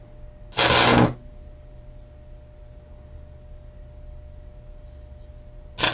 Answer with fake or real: real